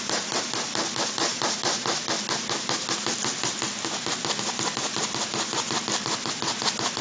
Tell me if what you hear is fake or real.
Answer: real